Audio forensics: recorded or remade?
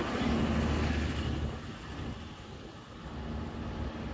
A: recorded